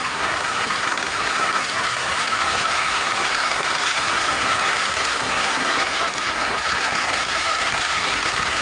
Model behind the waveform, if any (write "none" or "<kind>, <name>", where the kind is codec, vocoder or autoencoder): codec, SNAC